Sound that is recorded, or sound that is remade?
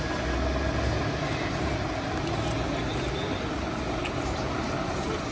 recorded